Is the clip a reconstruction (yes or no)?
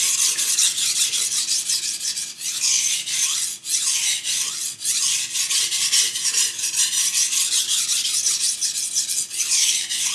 no